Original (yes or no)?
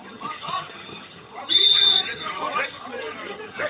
no